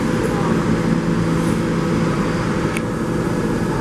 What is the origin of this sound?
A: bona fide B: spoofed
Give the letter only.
A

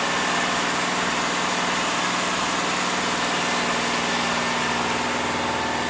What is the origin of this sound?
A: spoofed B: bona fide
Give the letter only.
B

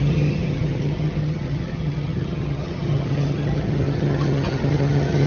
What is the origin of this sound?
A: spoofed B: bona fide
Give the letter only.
A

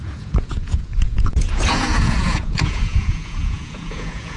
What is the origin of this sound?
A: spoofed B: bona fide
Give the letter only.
A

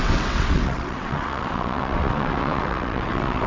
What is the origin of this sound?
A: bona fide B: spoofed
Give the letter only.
B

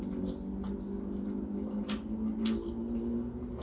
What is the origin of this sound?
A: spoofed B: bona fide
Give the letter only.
B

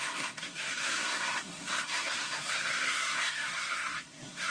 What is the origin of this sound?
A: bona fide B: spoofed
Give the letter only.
B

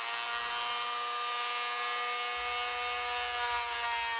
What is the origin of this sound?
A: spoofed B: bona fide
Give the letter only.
B